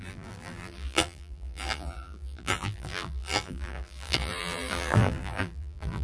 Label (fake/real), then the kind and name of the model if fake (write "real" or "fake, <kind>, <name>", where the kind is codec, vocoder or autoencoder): fake, vocoder, BigVGAN v2